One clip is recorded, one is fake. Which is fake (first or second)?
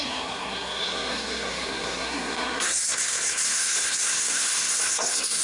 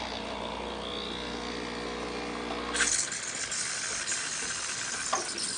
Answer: first